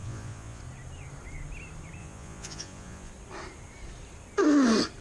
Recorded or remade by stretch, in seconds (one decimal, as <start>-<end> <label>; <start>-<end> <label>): 0.0-0.6 remade; 0.6-2.0 recorded; 2.0-3.1 remade; 3.1-5.0 recorded